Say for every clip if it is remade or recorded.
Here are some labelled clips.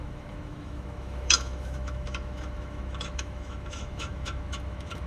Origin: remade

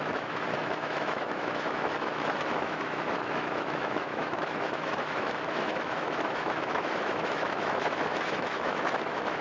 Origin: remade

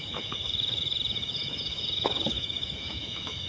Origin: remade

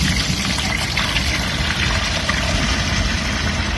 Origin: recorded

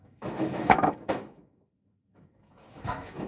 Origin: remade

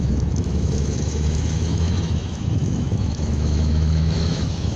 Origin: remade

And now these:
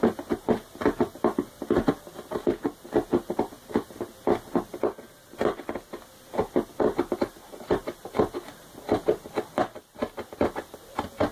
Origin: recorded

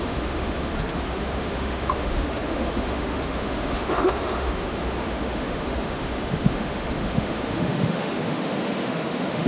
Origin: remade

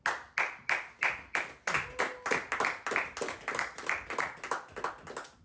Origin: recorded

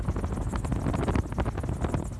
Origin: recorded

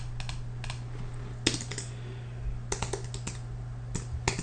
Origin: recorded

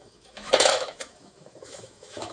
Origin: remade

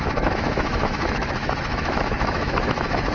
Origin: remade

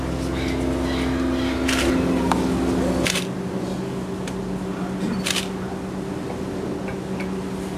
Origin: recorded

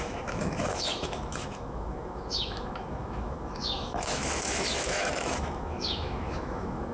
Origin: remade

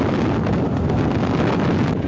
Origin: recorded